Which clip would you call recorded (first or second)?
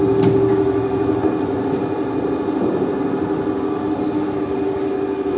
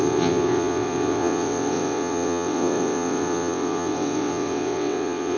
first